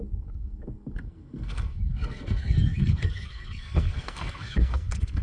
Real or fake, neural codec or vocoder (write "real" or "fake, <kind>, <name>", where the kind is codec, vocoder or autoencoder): fake, codec, SNAC